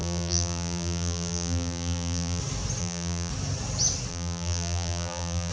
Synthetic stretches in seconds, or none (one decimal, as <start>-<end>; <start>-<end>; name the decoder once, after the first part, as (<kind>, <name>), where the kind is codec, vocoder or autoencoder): 0.0-2.4 (vocoder, BigVGAN v2); 2.8-3.3; 4.1-5.5